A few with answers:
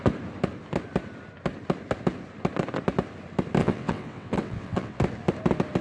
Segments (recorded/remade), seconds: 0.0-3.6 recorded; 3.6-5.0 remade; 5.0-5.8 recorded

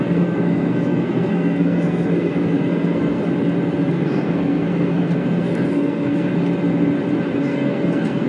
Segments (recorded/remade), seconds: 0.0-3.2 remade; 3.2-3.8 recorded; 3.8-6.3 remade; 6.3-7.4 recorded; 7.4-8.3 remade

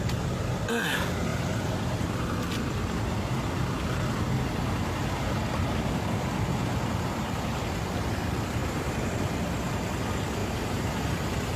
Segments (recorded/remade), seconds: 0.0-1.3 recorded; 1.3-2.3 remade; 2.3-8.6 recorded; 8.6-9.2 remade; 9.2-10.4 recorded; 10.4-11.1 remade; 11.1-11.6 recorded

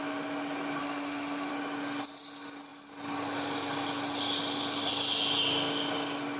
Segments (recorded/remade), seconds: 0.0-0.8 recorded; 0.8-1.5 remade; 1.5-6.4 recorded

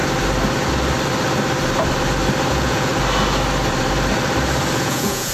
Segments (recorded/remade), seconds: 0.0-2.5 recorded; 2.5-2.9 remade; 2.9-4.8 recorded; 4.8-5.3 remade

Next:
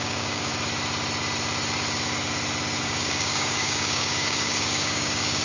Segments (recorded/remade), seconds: 0.0-0.5 remade; 0.5-2.8 recorded; 2.8-5.4 remade